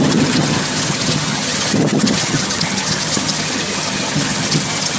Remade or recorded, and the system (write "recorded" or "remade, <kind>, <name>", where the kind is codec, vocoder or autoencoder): remade, vocoder, HiFi-GAN